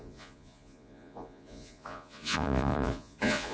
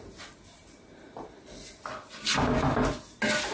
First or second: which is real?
second